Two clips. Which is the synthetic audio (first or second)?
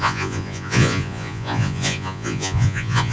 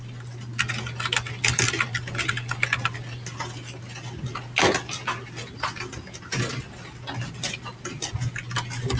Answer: first